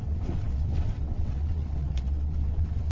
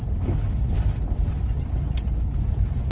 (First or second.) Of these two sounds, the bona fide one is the second